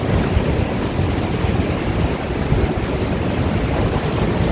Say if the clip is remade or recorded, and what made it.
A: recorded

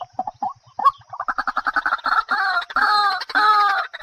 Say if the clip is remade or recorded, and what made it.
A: recorded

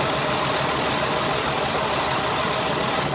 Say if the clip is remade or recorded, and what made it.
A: recorded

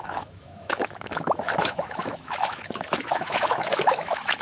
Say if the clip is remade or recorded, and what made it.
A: remade, autoencoder, DAC-VAE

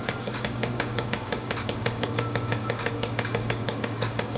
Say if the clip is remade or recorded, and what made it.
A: remade, codec, DAC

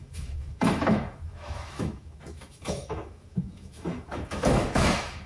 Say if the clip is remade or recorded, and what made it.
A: remade, autoencoder, DAC-VAE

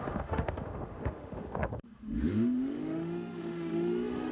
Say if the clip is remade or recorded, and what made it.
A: remade, autoencoder, DAC-VAE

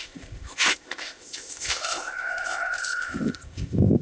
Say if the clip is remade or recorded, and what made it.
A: remade, codec, ZipCodec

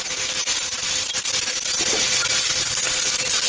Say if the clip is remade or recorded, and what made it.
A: recorded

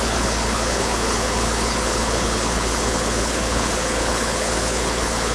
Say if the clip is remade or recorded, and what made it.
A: remade, codec, HILCodec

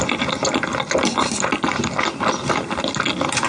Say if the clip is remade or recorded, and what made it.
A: recorded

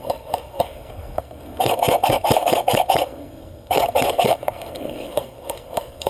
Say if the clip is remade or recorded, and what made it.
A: remade, codec, SNAC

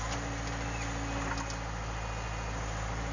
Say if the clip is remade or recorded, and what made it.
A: recorded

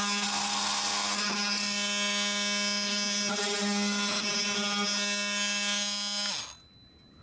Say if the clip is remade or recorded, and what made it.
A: recorded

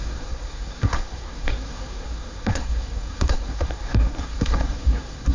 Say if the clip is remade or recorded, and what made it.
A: remade, codec, SNAC